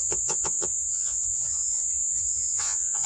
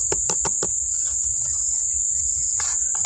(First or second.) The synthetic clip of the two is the first